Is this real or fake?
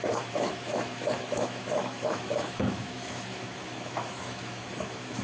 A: fake